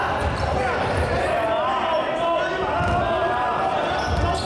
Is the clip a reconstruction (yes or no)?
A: no